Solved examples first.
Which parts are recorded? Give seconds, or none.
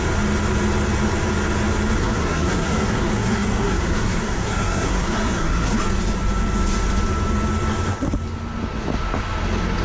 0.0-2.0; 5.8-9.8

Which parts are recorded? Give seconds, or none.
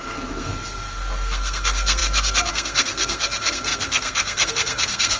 none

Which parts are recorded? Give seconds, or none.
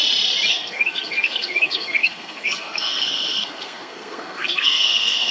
0.0-0.5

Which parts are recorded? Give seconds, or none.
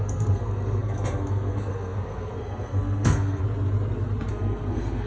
3.4-4.3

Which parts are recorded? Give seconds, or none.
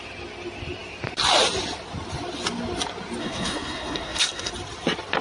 0.0-3.2; 4.5-5.2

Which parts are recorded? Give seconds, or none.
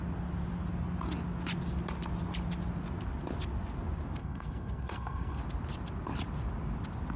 0.0-4.2; 5.4-7.2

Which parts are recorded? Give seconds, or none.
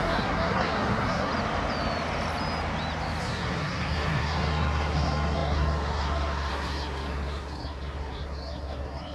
1.3-3.2